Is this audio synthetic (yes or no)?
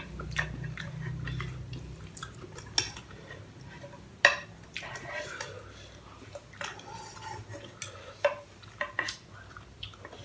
no